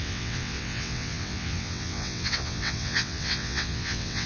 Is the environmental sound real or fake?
fake